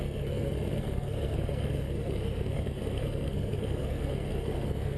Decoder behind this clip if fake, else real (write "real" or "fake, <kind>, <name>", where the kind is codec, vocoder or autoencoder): fake, codec, SNAC